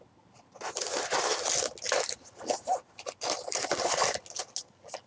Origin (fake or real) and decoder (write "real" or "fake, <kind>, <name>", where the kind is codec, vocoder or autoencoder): real